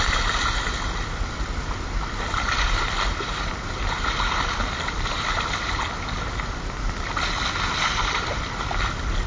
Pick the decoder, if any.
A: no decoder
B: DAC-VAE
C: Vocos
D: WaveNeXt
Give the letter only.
A